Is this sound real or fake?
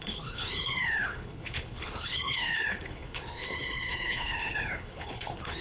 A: fake